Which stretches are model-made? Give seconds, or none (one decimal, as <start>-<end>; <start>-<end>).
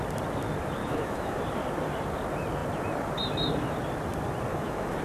0.8-1.4; 4.5-5.0